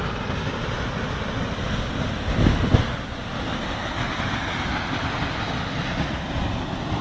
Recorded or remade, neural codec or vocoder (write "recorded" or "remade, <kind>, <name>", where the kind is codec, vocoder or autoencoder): recorded